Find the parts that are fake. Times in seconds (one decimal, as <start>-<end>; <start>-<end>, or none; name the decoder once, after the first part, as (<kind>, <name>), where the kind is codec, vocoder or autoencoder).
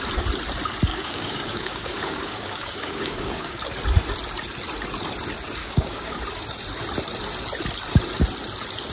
0.9-3.6 (codec, DAC); 5.6-6.2